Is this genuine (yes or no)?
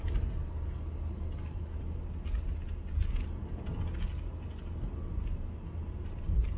yes